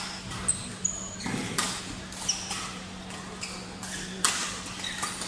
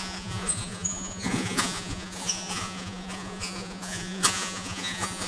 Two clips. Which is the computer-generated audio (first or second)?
second